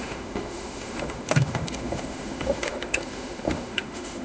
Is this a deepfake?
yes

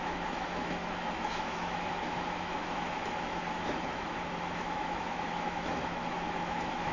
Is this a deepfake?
yes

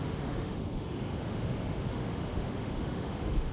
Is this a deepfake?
yes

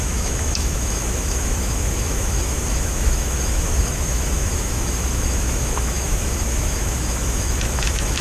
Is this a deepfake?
yes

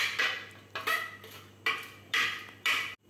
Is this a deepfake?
no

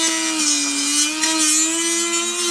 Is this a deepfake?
no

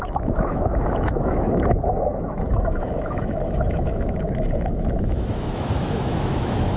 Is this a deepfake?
yes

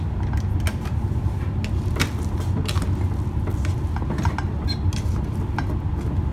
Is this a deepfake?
no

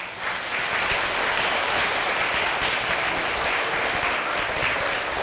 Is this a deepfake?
no